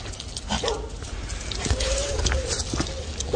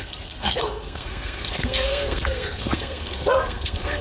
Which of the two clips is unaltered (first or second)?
first